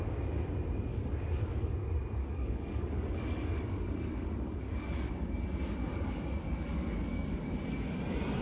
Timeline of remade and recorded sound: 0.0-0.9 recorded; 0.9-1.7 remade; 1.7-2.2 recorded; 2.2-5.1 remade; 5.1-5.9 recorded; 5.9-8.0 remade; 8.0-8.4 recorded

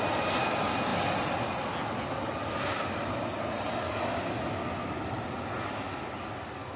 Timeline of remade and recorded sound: 0.0-6.8 recorded

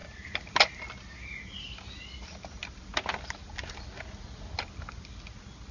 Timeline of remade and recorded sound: 0.0-5.7 recorded

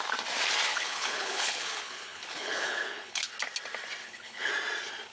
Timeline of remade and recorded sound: 0.0-0.7 recorded; 0.7-3.3 remade; 3.3-4.0 recorded; 4.0-4.5 remade; 4.5-5.1 recorded

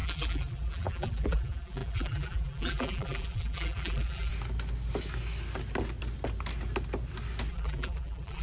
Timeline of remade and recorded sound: 0.0-4.3 remade; 4.3-7.5 recorded; 7.5-8.4 remade

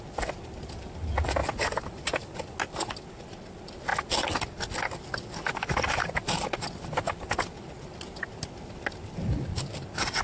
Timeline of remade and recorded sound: 0.0-10.2 recorded